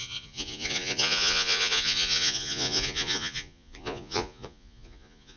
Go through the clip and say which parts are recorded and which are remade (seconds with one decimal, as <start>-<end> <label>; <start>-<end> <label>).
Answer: 0.0-5.4 remade

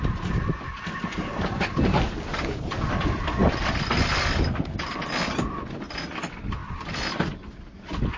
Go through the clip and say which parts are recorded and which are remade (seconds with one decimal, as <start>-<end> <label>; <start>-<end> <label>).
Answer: 0.0-8.2 recorded

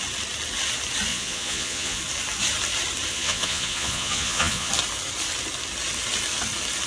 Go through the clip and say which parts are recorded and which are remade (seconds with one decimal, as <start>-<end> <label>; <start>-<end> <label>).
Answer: 0.0-1.1 recorded; 1.1-2.0 remade; 2.0-3.1 recorded; 3.1-4.7 remade; 4.7-6.9 recorded

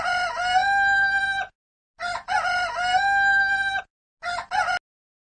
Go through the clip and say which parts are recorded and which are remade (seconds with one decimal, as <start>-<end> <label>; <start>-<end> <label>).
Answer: 0.0-5.3 recorded

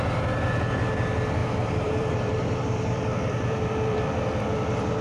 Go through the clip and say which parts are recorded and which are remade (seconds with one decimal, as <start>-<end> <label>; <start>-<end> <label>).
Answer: 0.0-1.4 recorded; 1.4-4.4 remade; 4.4-5.0 recorded

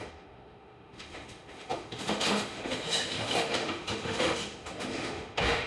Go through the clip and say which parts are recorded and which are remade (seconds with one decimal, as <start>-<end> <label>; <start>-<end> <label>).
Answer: 0.0-5.7 remade

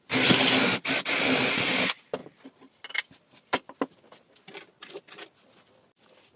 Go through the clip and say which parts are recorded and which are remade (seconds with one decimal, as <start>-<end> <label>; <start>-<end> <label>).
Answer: 0.0-6.4 recorded

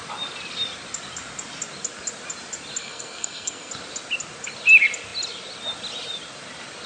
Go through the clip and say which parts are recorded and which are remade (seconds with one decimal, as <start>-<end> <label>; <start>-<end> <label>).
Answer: 0.0-2.8 recorded; 2.8-3.7 remade; 3.7-6.9 recorded